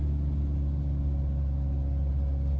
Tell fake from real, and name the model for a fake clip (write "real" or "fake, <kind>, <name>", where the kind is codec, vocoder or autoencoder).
real